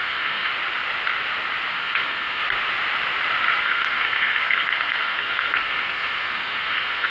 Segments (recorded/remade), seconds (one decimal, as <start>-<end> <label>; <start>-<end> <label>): 0.0-0.5 remade; 0.5-1.7 recorded; 1.7-2.4 remade; 2.4-3.6 recorded; 3.6-7.1 remade